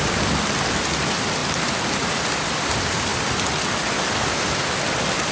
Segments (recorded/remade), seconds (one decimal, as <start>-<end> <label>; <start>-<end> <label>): 0.0-1.4 remade; 1.4-2.1 recorded; 2.1-3.1 remade; 3.1-4.6 recorded; 4.6-5.3 remade